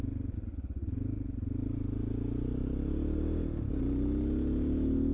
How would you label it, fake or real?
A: real